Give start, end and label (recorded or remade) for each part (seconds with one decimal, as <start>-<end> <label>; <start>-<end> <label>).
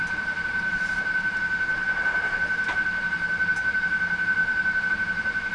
0.0-0.9 remade; 0.9-5.5 recorded